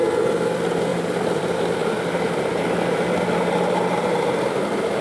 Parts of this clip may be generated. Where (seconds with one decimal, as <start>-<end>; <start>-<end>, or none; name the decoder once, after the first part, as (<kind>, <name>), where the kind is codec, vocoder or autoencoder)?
0.9-1.4 (vocoder, BigVGAN v2)